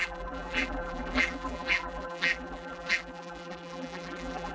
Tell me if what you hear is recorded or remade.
remade